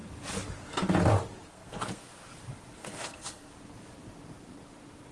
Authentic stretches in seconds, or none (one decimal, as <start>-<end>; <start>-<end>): 0.0-1.5; 2.3-2.8; 3.5-5.1